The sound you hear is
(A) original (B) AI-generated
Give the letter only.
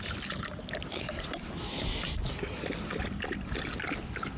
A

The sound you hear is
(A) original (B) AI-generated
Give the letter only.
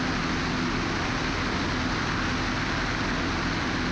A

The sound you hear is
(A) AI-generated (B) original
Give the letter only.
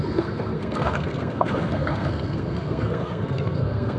A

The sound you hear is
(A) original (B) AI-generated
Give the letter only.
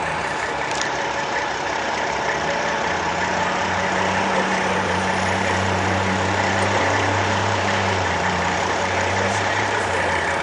B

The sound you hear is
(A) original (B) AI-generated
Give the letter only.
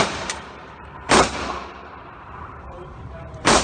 B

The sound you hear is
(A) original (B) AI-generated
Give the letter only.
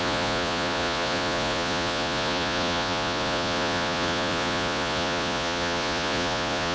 B